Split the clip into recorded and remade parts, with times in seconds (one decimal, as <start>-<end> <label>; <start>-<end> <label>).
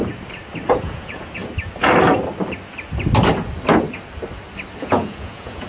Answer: 0.0-0.8 recorded; 0.8-1.4 remade; 1.4-4.8 recorded; 4.8-5.7 remade